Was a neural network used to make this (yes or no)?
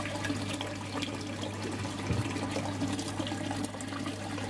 no